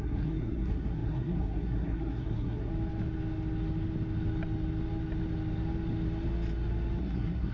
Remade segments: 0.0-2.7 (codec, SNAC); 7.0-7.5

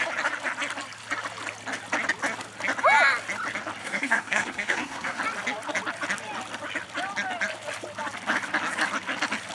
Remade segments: 3.8-5.2 (codec, SNAC)